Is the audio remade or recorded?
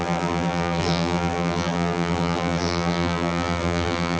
remade